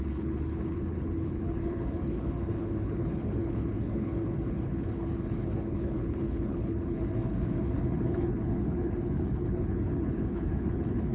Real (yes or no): no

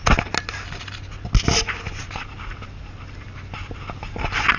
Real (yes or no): yes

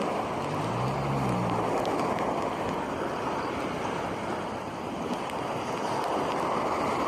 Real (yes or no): yes